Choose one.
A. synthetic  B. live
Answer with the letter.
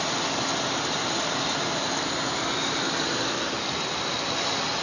B